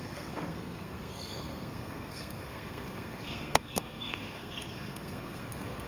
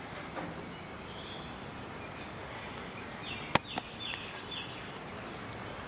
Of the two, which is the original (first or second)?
second